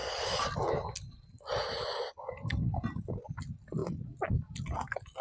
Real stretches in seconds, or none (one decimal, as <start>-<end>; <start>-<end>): 0.0-5.2